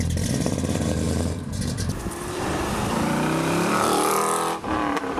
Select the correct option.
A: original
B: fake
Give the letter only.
B